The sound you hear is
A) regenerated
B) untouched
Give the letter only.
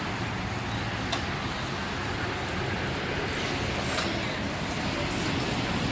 B